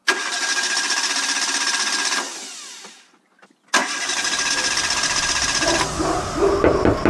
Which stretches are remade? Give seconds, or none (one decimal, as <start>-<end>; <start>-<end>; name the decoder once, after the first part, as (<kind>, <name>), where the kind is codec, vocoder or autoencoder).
none